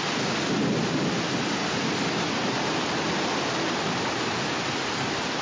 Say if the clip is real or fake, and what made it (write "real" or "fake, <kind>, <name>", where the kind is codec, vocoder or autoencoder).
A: real